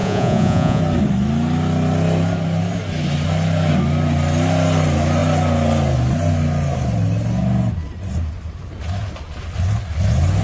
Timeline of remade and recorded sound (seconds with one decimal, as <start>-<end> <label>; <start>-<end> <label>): 0.0-0.8 remade; 0.8-10.4 recorded